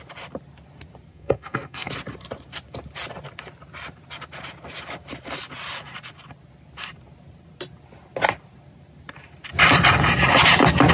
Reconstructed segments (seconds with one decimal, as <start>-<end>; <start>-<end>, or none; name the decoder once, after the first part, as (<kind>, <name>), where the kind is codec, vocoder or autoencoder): 1.1-1.9 (codec, SNAC)